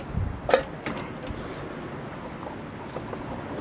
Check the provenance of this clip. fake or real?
real